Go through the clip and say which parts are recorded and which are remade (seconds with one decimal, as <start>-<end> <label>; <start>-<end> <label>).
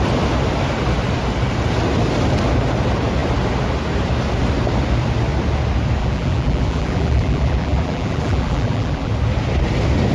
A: 0.0-6.0 recorded; 6.0-9.1 remade; 9.1-10.1 recorded